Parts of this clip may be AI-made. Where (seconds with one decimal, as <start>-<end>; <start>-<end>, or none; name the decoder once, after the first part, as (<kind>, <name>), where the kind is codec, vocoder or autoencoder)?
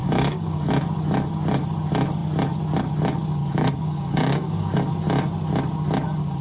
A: 0.0-0.7 (codec, DAC); 3.4-4.9